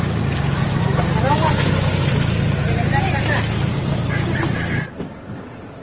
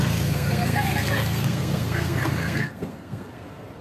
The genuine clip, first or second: first